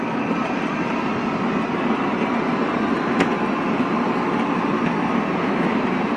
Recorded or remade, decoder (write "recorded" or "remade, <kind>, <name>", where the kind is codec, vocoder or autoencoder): recorded